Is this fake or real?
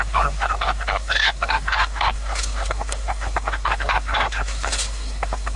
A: fake